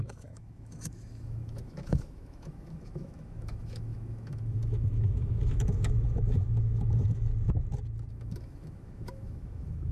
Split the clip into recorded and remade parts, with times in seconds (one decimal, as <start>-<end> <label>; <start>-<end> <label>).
0.0-7.3 remade; 7.3-8.1 recorded; 8.1-9.9 remade

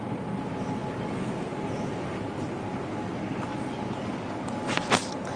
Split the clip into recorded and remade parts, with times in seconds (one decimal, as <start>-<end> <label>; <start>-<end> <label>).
0.0-5.4 recorded

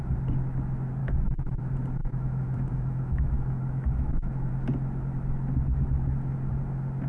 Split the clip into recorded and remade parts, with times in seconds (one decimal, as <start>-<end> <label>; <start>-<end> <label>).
0.0-1.0 recorded; 1.0-1.6 remade; 1.6-2.0 recorded; 2.0-4.5 remade; 4.5-7.1 recorded

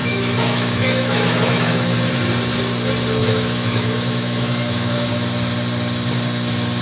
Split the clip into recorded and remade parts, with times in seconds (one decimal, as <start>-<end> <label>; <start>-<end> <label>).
0.0-2.1 remade; 2.1-3.2 recorded; 3.2-5.1 remade; 5.1-6.8 recorded